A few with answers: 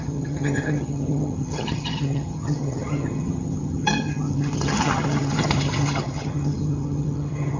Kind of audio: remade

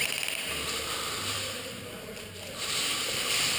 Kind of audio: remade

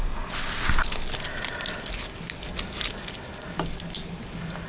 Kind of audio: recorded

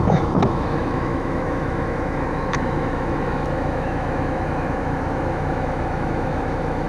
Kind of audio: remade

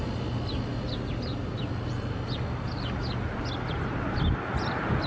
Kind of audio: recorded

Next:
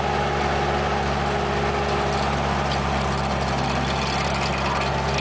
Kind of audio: recorded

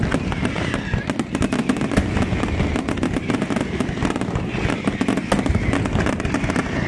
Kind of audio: recorded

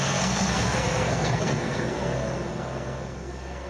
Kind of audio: remade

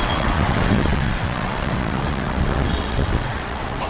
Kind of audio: remade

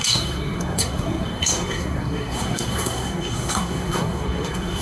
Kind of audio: remade